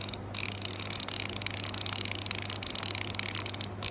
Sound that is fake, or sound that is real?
real